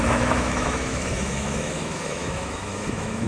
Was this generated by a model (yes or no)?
yes